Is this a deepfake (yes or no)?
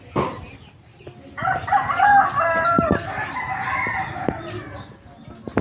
no